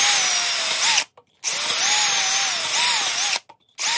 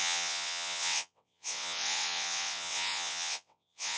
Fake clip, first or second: second